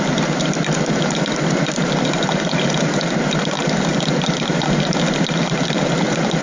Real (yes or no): yes